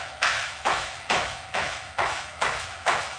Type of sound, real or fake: fake